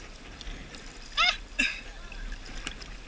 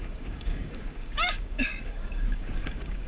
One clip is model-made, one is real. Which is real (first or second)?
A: first